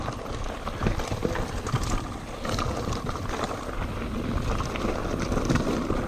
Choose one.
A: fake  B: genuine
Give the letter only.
B